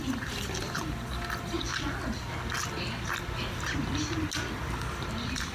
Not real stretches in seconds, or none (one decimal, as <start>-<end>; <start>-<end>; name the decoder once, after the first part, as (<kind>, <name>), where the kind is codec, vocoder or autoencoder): 0.0-1.7 (vocoder, BigVGAN v2); 4.5-5.5